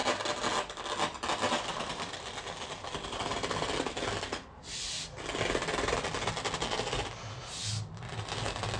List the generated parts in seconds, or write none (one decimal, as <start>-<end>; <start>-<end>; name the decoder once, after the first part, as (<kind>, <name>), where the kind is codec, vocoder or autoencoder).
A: none